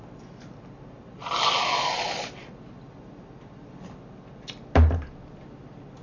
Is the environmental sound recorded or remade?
recorded